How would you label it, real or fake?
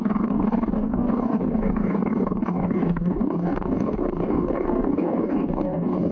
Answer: fake